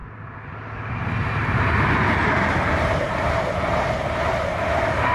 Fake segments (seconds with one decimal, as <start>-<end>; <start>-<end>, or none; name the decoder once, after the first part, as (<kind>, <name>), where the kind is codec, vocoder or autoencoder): none